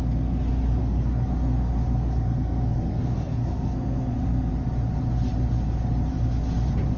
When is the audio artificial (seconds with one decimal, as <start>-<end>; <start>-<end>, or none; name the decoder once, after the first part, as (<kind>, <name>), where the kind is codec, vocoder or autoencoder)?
0.8-4.5 (codec, SNAC)